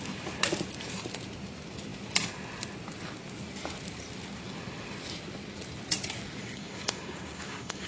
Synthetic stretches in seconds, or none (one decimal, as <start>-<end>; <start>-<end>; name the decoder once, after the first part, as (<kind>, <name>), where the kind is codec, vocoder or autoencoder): 6.4-7.9 (codec, DAC)